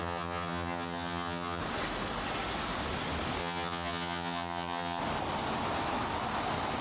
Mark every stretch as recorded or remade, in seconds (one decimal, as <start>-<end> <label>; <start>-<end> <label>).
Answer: 0.0-1.6 remade; 1.6-3.4 recorded; 3.4-5.0 remade; 5.0-6.8 recorded